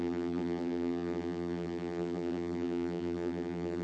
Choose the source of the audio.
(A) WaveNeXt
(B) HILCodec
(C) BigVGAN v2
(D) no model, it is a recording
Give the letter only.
C